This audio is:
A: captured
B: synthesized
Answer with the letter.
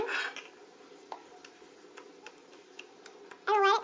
A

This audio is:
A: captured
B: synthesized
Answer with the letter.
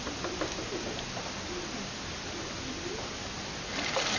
A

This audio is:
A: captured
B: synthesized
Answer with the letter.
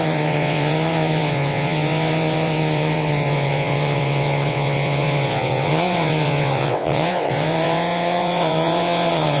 B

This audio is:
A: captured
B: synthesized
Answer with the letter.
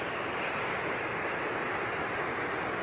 A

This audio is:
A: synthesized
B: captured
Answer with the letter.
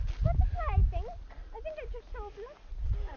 B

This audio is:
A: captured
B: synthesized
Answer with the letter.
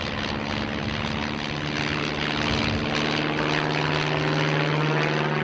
A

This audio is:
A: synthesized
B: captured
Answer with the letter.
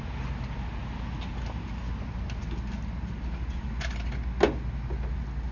B